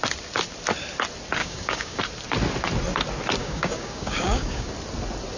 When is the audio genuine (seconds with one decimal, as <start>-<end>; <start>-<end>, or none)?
0.0-1.4; 2.0-3.4; 4.7-5.4